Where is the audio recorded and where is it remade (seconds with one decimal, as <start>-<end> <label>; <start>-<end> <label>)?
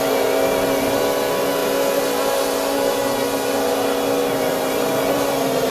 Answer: 0.0-5.7 recorded